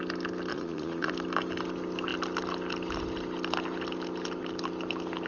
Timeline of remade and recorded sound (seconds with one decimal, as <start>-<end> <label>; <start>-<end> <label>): 0.0-0.5 recorded; 0.5-1.1 remade; 1.1-5.3 recorded

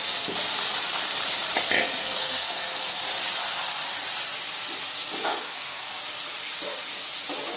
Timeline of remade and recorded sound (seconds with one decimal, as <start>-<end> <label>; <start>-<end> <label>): 0.0-2.0 recorded; 2.0-3.0 remade; 3.0-5.3 recorded; 5.3-5.9 remade; 5.9-7.6 recorded

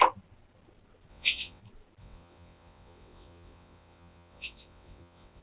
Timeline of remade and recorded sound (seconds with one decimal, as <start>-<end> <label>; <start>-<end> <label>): 0.0-1.1 recorded; 1.1-1.6 remade; 1.6-2.0 recorded; 2.0-5.4 remade

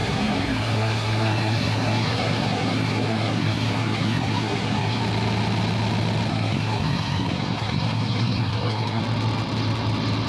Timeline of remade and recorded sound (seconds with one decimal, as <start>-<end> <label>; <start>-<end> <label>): 0.0-5.0 remade; 5.0-6.3 recorded; 6.3-9.0 remade; 9.0-10.3 recorded

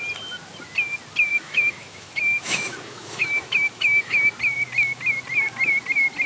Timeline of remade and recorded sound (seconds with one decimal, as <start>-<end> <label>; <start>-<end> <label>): 0.0-1.3 recorded; 1.3-4.2 remade; 4.2-6.3 recorded

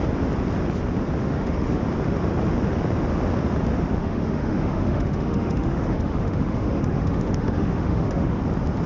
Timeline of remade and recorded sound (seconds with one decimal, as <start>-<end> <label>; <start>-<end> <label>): 0.0-1.2 recorded; 1.2-1.8 remade; 1.8-4.0 recorded; 4.0-8.4 remade; 8.4-8.9 recorded

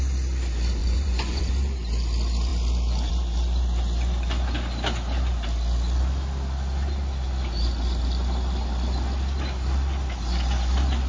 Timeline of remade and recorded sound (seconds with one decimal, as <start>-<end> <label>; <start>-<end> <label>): 0.0-0.8 recorded; 0.8-1.5 remade; 1.5-11.1 recorded

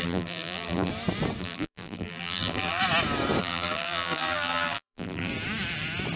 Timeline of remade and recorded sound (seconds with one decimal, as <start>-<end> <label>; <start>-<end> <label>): 0.0-0.9 remade; 0.9-1.4 recorded; 1.4-2.8 remade; 2.8-3.4 recorded; 3.4-5.3 remade; 5.3-6.2 recorded